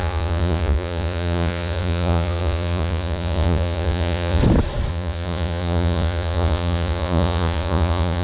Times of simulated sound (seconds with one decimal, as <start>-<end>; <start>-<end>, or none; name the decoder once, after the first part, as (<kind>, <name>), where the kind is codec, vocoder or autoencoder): 0.0-4.4 (vocoder, Vocos); 4.9-8.2